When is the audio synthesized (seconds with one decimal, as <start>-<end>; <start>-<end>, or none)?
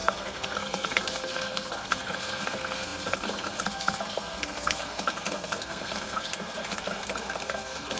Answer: 0.0-8.0